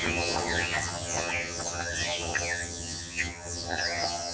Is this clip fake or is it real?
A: fake